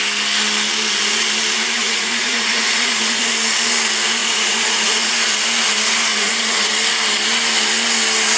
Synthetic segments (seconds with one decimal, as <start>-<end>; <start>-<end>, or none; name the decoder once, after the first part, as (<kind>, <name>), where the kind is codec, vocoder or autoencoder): 1.8-3.3 (vocoder, Vocos); 4.2-5.1; 6.1-6.7